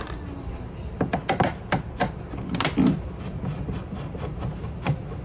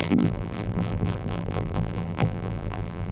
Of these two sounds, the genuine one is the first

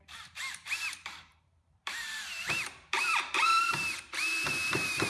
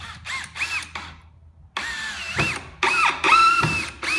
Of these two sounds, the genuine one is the second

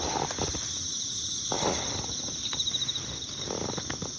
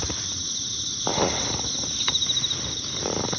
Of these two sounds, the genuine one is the first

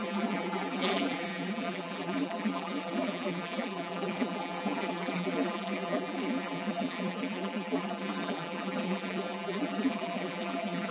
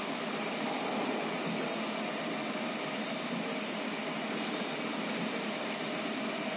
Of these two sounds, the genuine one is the second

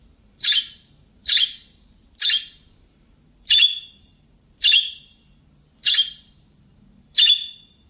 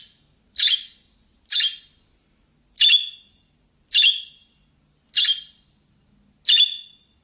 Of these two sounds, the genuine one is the second